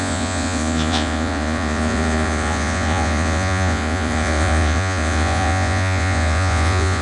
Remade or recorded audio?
remade